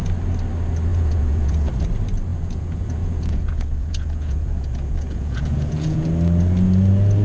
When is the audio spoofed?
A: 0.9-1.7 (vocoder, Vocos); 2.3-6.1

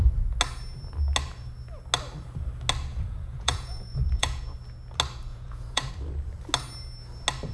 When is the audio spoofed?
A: 2.9-4.4 (vocoder, Vocos); 5.3-5.9

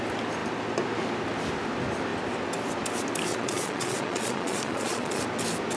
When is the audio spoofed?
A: 3.3-5.2 (vocoder, Vocos)

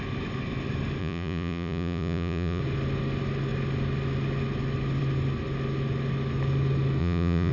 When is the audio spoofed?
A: 1.0-2.6 (vocoder, Vocos); 7.0-7.5

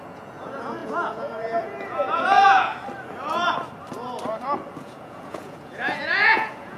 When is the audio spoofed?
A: 0.0-2.7 (vocoder, Vocos); 4.8-6.8